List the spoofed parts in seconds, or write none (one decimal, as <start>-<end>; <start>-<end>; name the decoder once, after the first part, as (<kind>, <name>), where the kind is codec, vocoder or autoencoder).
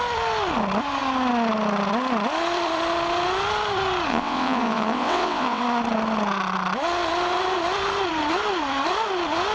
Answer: 4.1-5.6 (vocoder, WaveNeXt)